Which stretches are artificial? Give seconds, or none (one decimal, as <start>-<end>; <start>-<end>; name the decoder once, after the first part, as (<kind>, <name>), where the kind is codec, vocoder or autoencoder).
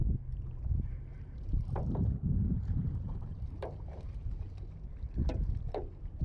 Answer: 1.1-4.8 (vocoder, BigVGAN v2)